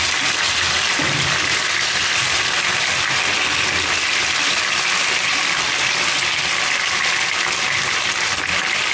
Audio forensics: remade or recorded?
recorded